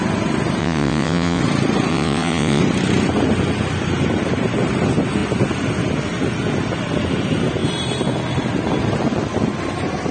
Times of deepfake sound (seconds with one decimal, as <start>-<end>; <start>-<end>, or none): 0.6-1.4; 1.9-2.6